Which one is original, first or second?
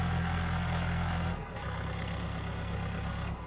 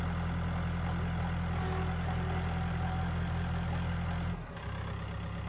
second